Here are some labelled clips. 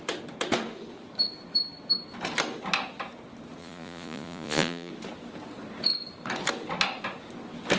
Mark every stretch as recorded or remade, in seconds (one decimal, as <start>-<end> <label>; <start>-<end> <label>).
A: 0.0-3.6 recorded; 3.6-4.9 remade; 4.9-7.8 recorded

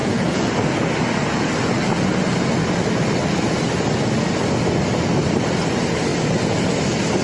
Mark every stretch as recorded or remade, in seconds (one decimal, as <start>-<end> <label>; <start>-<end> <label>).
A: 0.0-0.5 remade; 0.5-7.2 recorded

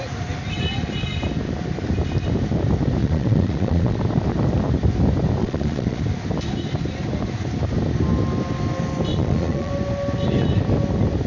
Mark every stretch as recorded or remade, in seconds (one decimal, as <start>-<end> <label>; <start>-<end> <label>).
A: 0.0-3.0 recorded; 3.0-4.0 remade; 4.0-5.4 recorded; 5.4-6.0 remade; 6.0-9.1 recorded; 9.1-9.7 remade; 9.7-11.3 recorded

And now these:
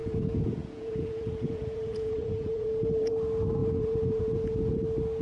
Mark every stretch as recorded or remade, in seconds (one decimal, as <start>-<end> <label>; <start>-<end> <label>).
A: 0.0-3.1 remade; 3.1-3.6 recorded; 3.6-4.7 remade; 4.7-5.2 recorded